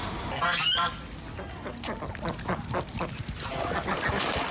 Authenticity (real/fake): real